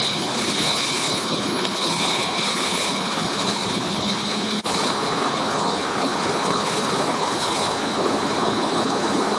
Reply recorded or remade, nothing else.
remade